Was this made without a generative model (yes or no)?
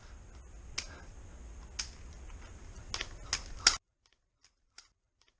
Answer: yes